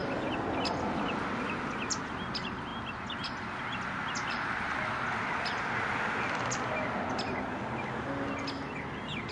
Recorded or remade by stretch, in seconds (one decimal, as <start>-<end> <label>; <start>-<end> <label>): 0.0-9.3 recorded